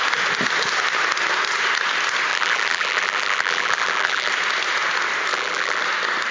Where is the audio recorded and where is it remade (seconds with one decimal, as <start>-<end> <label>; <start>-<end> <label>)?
0.0-2.3 recorded; 2.3-4.3 remade; 4.3-5.3 recorded; 5.3-5.8 remade; 5.8-6.3 recorded